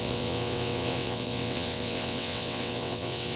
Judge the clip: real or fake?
fake